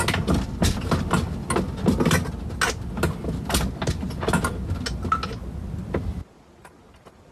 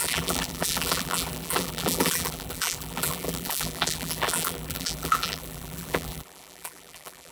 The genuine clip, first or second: first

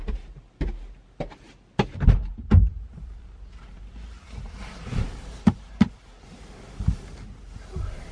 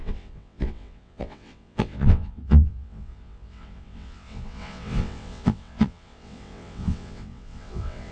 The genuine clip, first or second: first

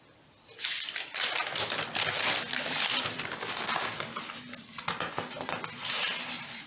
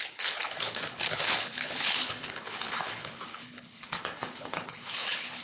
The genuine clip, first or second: first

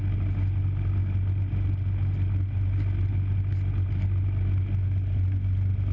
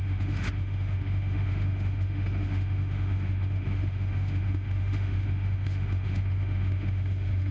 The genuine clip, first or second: first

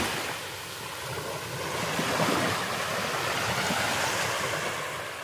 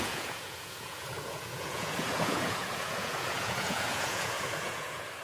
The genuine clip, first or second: first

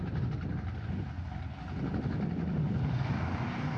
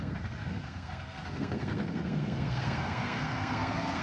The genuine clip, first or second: first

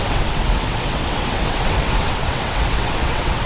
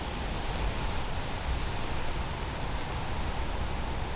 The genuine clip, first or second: second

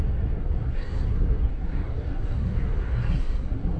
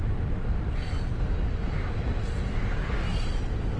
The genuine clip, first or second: second